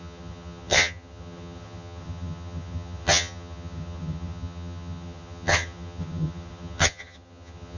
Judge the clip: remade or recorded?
remade